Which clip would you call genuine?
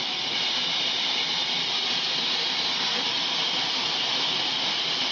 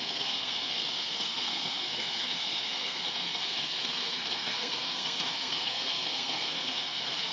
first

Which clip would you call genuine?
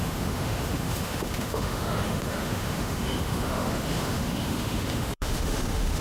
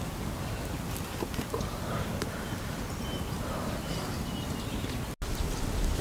second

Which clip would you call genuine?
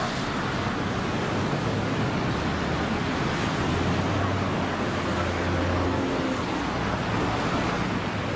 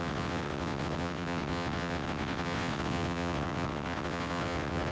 first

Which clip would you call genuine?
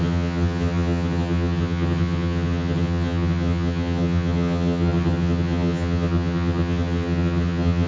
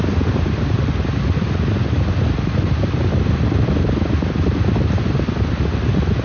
second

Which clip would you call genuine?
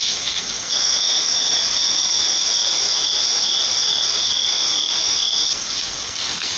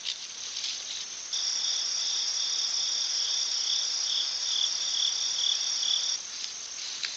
second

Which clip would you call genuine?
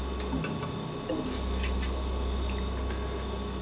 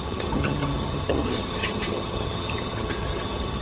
first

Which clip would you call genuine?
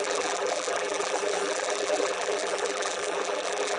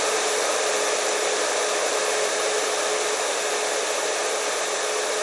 second